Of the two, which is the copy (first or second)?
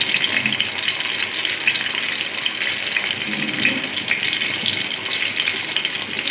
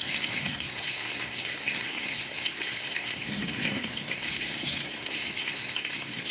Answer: second